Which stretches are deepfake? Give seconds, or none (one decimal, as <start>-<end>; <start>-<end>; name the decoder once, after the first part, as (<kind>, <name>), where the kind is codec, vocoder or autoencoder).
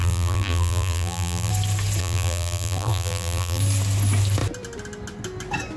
0.0-1.5 (vocoder, BigVGAN v2); 2.0-3.6